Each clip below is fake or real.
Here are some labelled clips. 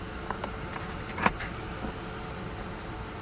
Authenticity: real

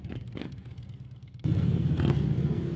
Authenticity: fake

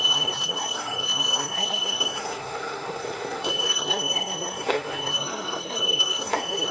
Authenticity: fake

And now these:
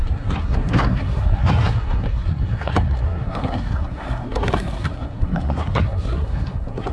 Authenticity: fake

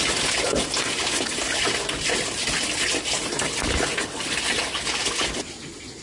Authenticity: real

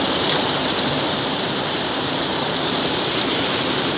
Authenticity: fake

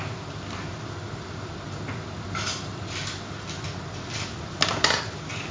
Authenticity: real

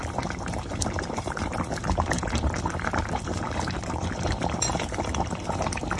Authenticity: fake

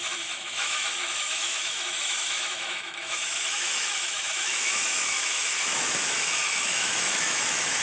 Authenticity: fake